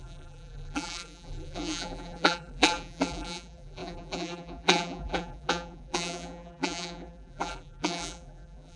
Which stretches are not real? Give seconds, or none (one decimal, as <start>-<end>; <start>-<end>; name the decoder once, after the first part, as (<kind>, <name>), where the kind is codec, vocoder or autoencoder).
0.0-8.8 (vocoder, BigVGAN v2)

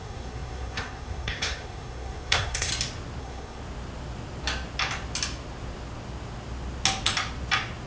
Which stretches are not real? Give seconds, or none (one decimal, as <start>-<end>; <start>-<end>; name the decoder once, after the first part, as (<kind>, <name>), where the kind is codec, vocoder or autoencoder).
0.0-2.7 (codec, SNAC); 3.2-3.6

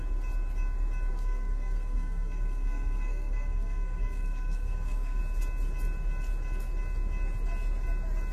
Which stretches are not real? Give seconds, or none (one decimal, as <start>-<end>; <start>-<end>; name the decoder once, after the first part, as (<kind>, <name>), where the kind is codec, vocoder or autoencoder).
1.1-5.2 (codec, SNAC)

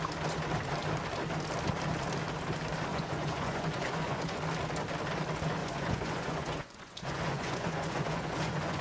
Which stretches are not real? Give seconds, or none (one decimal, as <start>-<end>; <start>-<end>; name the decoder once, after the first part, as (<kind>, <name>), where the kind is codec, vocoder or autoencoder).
2.9-4.4 (vocoder, Vocos); 5.6-8.8

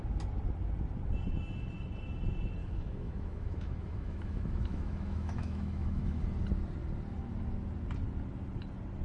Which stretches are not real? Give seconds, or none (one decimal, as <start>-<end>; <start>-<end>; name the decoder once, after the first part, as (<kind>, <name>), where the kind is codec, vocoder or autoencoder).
2.6-6.2 (autoencoder, DAC-VAE)

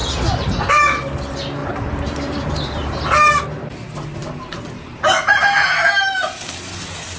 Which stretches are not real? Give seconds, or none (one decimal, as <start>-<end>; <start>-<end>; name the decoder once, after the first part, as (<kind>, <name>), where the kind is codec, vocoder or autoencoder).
1.6-2.4 (vocoder, BigVGAN v2); 4.2-6.3

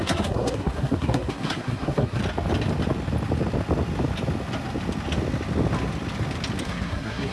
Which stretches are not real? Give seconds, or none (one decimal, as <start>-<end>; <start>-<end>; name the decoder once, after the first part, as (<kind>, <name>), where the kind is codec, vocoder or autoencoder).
0.0-2.2 (codec, SNAC); 6.6-7.3

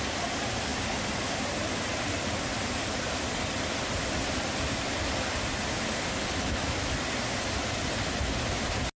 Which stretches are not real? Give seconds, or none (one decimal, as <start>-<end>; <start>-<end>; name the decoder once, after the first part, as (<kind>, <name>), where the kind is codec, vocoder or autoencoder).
none